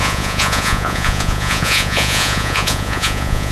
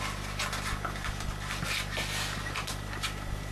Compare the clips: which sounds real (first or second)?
second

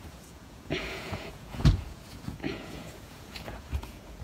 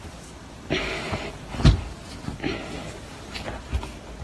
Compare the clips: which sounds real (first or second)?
second